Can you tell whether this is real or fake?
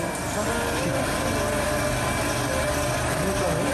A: real